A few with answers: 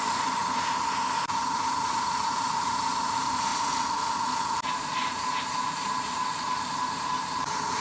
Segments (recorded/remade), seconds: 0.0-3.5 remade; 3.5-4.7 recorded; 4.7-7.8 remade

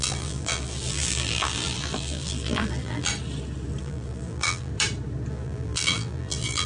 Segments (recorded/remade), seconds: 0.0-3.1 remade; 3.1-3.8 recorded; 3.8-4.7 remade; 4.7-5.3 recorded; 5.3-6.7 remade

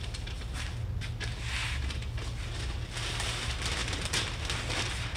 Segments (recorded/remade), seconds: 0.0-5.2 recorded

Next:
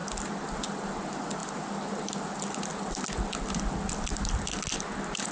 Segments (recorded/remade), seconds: 0.0-5.3 recorded

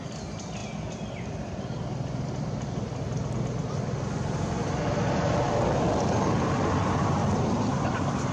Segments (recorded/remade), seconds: 0.0-8.3 recorded